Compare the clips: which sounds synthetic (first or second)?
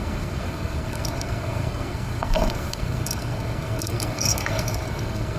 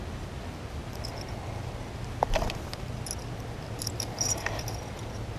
first